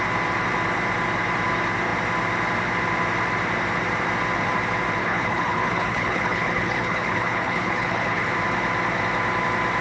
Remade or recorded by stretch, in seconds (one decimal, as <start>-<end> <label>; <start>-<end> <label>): 0.0-5.0 recorded; 5.0-8.3 remade; 8.3-9.8 recorded